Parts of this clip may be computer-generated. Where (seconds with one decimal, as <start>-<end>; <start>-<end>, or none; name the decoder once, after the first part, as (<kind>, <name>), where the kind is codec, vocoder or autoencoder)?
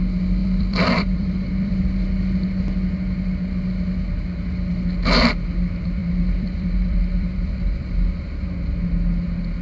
0.4-1.7 (vocoder, BigVGAN v2); 6.0-8.5